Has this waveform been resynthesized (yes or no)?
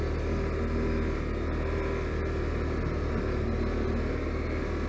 no